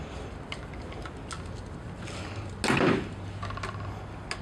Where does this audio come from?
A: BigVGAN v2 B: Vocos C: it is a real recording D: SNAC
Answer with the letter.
C